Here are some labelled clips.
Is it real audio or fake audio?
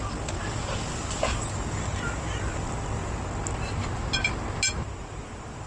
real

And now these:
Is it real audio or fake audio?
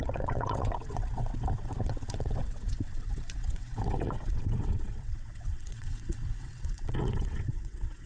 fake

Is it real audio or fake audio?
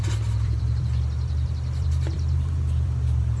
fake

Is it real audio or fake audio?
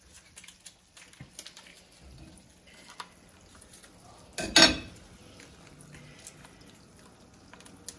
real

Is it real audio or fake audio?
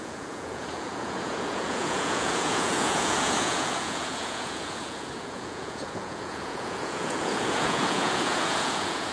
fake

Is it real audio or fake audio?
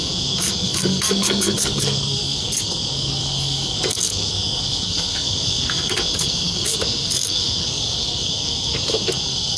fake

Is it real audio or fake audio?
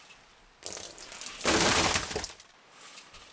real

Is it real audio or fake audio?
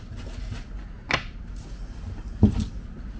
real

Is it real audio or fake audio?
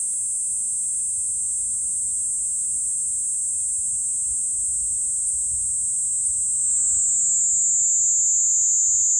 real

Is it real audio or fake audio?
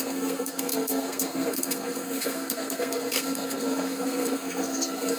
fake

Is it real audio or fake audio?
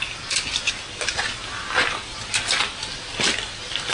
real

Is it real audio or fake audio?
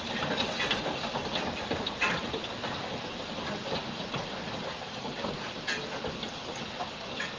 real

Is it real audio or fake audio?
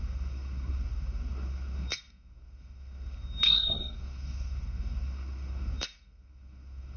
fake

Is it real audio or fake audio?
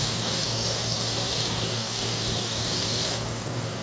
fake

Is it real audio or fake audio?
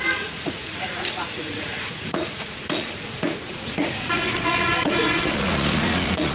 fake